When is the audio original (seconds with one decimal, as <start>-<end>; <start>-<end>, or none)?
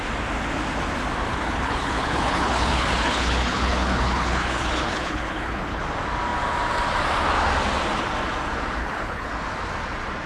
0.0-1.3; 5.8-8.8; 9.3-10.3